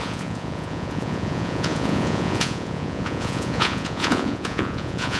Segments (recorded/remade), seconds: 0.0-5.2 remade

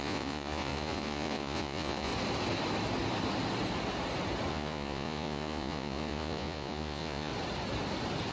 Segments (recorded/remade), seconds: 0.0-2.1 remade; 2.1-4.5 recorded; 4.5-7.3 remade; 7.3-8.3 recorded

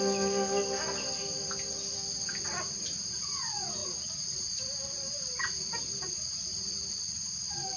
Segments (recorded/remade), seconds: 0.0-3.8 recorded; 3.8-4.6 remade; 4.6-7.8 recorded

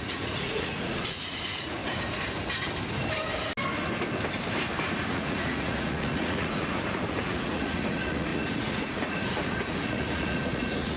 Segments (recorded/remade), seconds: 0.0-1.8 remade; 1.8-4.9 recorded; 4.9-11.0 remade